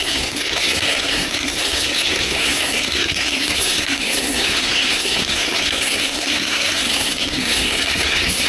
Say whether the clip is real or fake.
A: fake